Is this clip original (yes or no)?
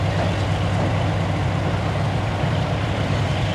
yes